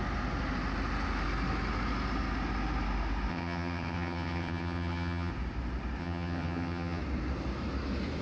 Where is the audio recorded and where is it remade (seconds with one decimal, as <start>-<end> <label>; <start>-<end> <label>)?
0.0-3.3 recorded; 3.3-5.3 remade; 5.3-6.0 recorded; 6.0-7.0 remade; 7.0-8.2 recorded